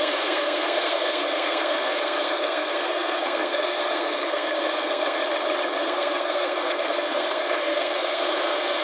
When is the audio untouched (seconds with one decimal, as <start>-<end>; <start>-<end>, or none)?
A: 5.2-5.8